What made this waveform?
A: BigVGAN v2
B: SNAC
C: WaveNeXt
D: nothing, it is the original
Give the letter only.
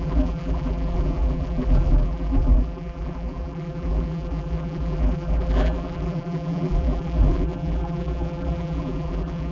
A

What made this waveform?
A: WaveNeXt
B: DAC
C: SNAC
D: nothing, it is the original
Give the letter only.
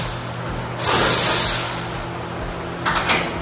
D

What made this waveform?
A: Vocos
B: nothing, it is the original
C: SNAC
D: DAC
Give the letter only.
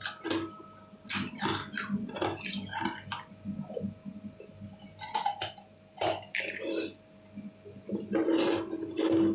B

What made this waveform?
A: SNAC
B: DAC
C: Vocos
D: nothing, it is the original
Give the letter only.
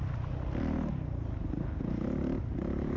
D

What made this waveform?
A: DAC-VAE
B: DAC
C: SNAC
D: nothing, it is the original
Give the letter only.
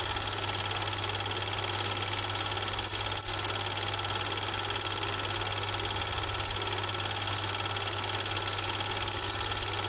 D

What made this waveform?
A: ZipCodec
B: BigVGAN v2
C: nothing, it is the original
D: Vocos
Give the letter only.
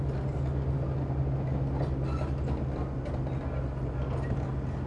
C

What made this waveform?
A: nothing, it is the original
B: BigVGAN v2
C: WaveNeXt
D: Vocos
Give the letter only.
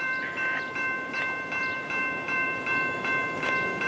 B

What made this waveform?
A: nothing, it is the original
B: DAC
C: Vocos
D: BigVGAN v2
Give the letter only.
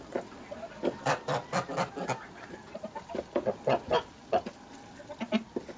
A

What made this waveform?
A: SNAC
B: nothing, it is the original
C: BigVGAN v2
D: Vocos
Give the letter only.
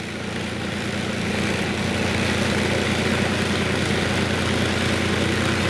B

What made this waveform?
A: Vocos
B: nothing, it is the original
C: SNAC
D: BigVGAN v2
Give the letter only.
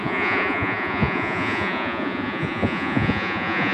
A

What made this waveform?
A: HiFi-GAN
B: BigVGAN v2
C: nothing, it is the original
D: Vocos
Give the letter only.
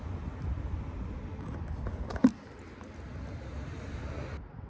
C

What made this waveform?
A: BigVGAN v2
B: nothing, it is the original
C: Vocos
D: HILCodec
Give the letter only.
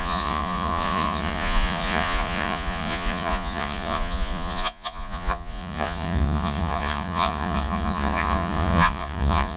C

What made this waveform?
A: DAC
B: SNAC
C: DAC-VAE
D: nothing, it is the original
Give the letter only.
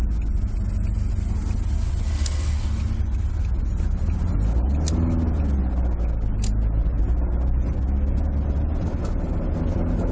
D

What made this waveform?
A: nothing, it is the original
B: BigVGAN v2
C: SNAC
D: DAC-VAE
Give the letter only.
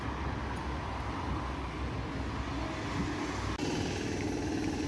A